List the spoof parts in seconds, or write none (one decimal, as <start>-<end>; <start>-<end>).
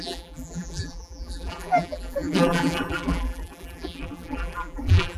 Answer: 0.0-5.2